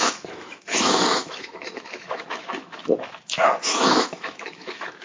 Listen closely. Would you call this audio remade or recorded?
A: remade